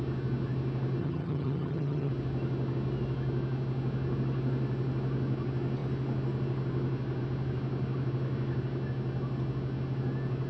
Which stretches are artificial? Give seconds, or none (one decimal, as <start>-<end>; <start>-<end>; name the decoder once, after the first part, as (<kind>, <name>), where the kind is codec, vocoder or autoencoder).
1.0-2.1 (vocoder, HiFi-GAN)

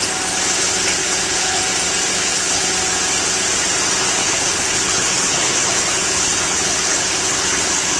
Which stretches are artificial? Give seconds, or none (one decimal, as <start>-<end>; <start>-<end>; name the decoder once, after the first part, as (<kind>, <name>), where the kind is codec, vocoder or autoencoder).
1.0-1.6 (codec, HILCodec); 2.1-2.7; 4.2-8.0

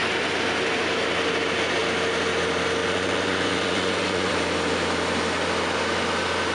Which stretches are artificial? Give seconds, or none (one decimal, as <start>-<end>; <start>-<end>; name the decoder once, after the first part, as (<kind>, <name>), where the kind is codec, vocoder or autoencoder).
2.8-4.3 (vocoder, Vocos)

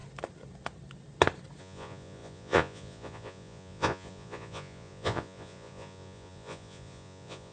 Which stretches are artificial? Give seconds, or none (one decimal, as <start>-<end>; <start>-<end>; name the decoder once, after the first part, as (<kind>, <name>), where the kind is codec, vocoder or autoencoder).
1.6-7.5 (vocoder, Vocos)

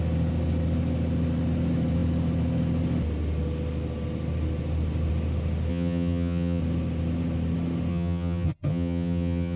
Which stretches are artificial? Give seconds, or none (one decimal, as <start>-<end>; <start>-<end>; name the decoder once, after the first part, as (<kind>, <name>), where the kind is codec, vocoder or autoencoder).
5.7-6.6 (vocoder, HiFi-GAN); 7.9-9.6